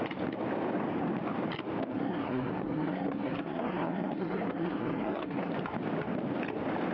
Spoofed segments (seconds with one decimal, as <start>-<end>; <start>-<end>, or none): 1.9-5.5